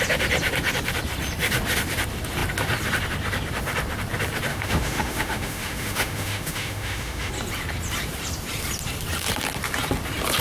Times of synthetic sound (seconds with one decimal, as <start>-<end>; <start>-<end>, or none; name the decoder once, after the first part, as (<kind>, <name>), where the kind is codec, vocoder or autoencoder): 4.5-7.3 (autoencoder, DAC-VAE)